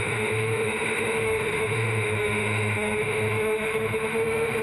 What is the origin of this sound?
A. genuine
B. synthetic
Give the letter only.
B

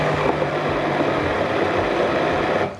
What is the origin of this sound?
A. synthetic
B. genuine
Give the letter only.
B